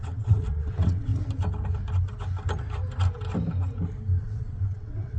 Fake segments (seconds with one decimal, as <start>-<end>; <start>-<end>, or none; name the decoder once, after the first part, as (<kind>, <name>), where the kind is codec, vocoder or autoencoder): 0.0-1.1 (vocoder, WaveNeXt); 4.2-5.2